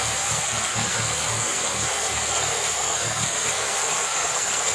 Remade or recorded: remade